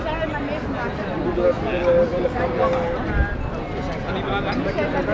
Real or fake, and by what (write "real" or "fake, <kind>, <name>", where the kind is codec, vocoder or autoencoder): real